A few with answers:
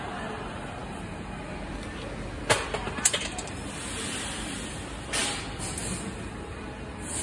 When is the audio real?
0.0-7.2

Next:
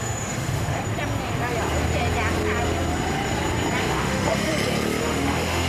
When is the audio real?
0.8-3.8; 4.5-5.0

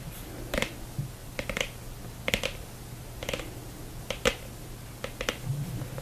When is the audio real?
0.0-1.2; 2.3-6.0